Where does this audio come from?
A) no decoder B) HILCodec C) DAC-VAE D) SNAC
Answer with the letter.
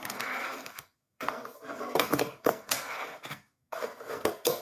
D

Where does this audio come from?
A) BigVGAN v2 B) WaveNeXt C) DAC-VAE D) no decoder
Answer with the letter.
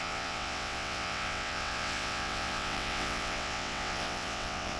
B